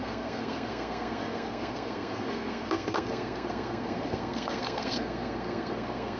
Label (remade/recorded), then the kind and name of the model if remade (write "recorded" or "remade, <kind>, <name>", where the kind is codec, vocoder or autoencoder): remade, codec, SNAC